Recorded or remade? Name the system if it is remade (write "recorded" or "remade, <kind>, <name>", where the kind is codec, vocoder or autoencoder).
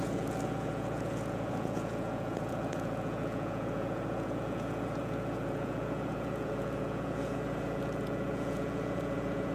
remade, vocoder, Vocos